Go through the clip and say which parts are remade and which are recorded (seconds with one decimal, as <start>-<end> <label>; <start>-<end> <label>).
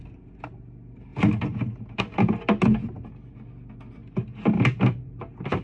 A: 0.0-5.6 recorded